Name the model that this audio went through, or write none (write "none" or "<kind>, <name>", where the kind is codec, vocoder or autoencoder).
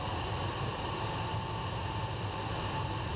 none